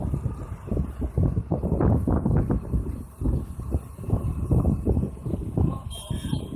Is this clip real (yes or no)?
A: yes